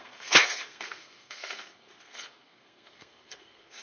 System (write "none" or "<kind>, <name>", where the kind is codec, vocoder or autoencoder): codec, SNAC